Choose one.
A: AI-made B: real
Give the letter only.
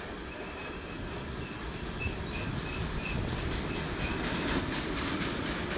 B